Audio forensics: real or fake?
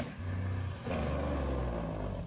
real